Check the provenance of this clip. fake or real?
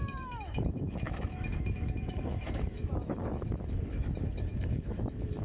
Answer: fake